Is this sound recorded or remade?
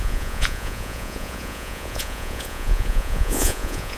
remade